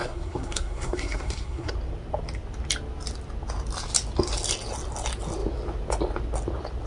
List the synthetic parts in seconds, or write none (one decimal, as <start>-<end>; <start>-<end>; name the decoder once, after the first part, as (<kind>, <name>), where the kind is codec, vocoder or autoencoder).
0.0-1.7 (codec, SNAC)